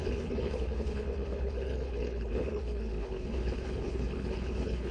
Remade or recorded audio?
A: remade